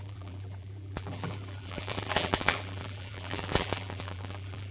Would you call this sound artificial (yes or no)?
yes